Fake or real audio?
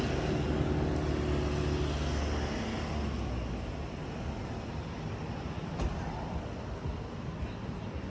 real